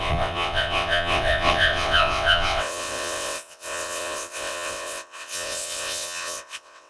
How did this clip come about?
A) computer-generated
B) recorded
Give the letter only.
A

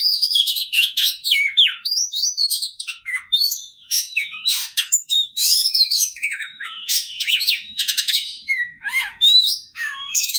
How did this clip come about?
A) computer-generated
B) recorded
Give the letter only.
A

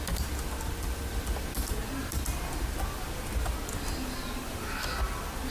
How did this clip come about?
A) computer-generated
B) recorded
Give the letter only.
B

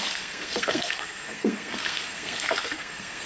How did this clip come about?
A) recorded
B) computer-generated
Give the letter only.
B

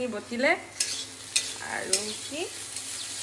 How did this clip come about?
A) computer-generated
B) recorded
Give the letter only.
B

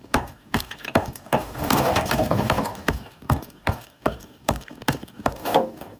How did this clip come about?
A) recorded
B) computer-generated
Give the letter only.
B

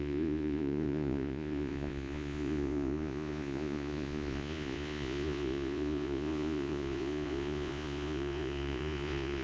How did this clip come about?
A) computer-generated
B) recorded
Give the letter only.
A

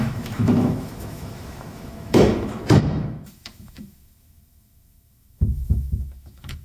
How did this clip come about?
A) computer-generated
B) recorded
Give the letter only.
A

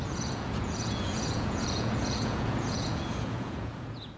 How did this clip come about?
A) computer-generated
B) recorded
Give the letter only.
A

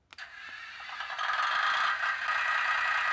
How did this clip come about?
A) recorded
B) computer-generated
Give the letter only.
A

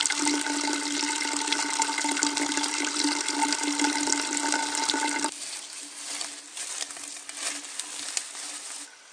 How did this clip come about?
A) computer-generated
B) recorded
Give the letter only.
B